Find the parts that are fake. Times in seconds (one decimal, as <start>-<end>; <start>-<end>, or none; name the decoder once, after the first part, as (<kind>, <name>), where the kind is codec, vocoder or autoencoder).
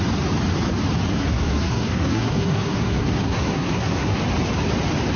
1.1-4.2 (codec, SNAC)